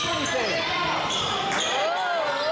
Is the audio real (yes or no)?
yes